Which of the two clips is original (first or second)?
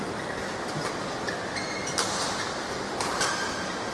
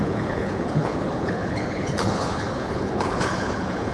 first